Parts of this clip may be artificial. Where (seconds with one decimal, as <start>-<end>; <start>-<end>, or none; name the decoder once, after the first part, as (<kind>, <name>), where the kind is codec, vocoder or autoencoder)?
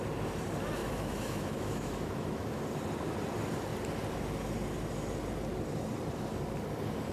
0.8-2.6 (autoencoder, DAC-VAE)